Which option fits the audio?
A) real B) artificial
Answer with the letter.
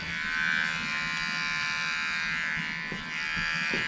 A